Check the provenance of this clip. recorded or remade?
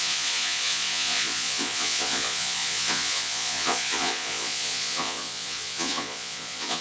remade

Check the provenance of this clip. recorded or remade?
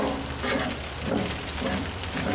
recorded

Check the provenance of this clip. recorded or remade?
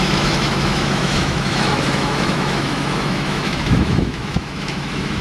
remade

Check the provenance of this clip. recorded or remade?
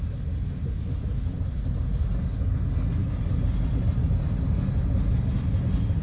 recorded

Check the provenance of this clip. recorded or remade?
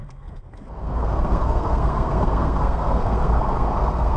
remade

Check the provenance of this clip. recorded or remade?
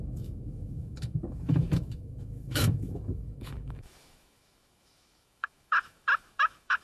remade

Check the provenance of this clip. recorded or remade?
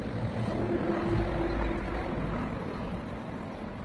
recorded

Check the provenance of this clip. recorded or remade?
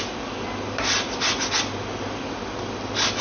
recorded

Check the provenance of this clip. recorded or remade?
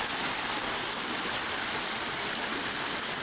recorded